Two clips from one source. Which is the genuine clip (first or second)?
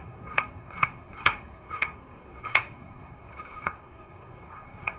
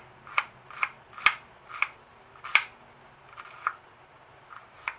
second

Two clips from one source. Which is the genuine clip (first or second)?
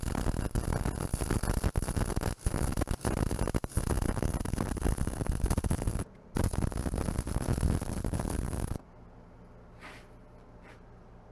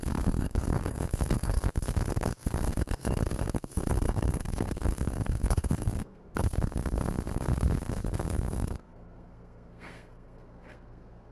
first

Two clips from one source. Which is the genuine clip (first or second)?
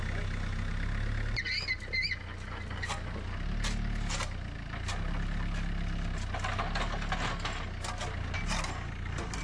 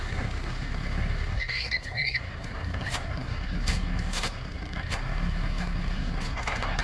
first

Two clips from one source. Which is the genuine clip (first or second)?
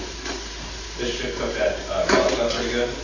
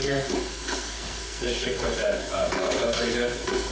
first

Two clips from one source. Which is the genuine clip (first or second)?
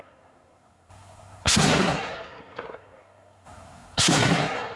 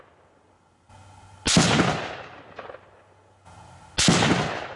second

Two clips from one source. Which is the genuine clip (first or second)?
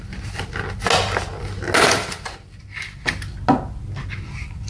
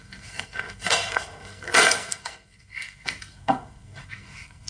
first